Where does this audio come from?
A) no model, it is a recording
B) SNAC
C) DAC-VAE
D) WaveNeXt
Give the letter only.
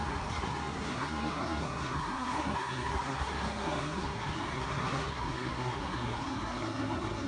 B